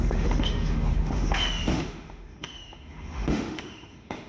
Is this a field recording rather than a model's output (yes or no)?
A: no